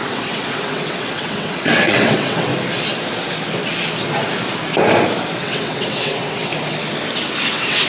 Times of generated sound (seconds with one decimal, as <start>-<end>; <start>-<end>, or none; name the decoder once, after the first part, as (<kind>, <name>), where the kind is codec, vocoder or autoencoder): 0.0-2.5 (vocoder, WaveNeXt); 5.4-6.5; 7.5-7.9